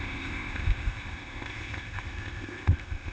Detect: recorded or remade remade